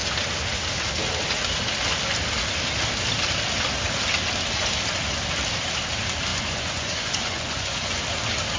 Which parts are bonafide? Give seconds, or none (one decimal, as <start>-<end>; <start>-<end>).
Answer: 0.0-6.3; 8.0-8.6